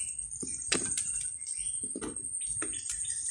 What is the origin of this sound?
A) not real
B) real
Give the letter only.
B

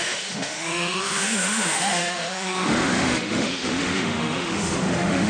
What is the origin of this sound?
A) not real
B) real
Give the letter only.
A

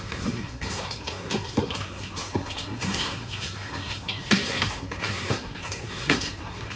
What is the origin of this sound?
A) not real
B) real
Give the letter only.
A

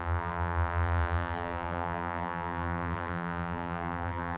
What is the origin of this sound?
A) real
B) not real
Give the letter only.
B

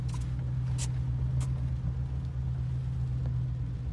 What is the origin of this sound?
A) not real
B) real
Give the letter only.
B